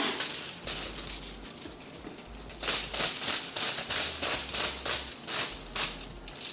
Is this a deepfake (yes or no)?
no